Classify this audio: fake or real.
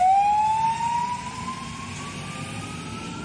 real